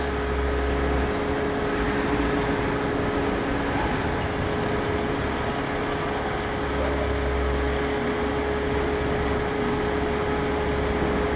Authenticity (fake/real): real